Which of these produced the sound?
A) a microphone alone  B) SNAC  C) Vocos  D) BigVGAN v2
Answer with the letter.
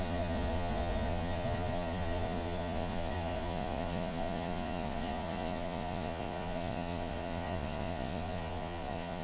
C